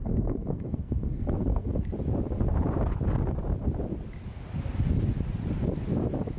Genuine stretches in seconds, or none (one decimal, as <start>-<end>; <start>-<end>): 1.9-6.4